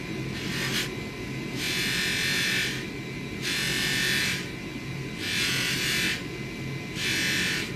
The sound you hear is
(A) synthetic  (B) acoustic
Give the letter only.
B